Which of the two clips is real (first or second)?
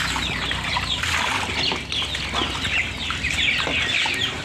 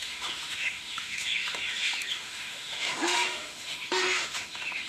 first